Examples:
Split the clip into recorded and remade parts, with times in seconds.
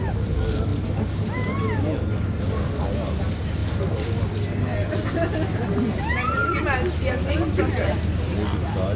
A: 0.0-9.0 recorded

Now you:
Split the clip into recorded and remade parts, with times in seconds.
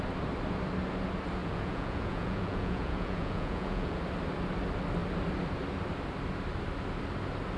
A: 0.0-1.4 recorded; 1.4-4.0 remade; 4.0-7.6 recorded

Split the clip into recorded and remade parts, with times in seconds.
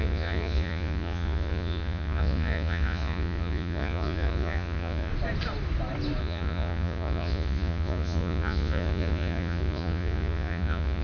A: 0.0-5.1 remade; 5.1-6.2 recorded; 6.2-11.0 remade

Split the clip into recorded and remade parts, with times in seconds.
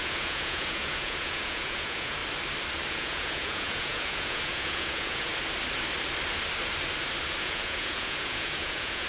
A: 0.0-2.2 remade; 2.2-2.9 recorded; 2.9-5.3 remade; 5.3-7.4 recorded; 7.4-9.1 remade